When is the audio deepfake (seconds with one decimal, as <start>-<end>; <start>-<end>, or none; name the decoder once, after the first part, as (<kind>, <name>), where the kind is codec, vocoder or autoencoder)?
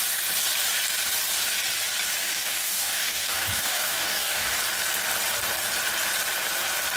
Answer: 2.2-4.6 (codec, DAC)